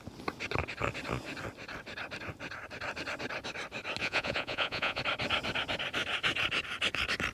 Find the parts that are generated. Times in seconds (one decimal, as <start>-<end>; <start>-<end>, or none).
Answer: 4.0-5.0